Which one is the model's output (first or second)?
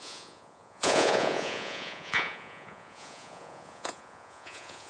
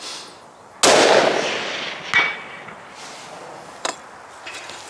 first